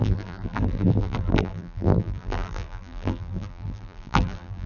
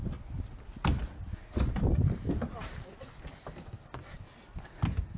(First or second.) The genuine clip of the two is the second